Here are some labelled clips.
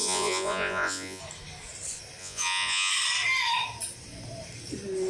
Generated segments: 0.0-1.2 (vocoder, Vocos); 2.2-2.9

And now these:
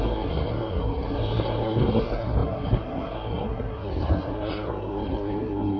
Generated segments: 0.0-5.8 (codec, SNAC)

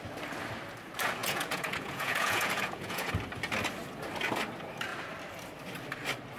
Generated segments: 1.2-3.1 (vocoder, Vocos)